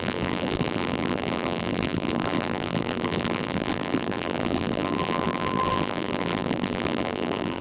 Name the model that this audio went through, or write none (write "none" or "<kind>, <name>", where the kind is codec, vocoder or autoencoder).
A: vocoder, BigVGAN v2